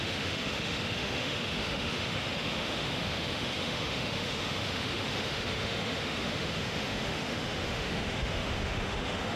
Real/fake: fake